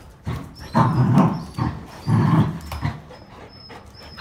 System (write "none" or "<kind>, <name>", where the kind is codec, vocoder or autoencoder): vocoder, BigVGAN v2